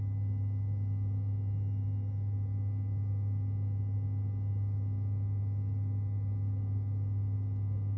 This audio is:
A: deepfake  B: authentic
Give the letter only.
B